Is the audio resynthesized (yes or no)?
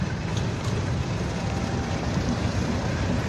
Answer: no